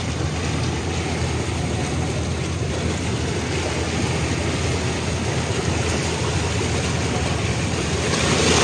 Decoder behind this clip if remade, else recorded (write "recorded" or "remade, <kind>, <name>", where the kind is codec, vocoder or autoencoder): recorded